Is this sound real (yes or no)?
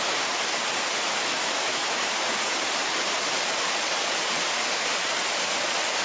yes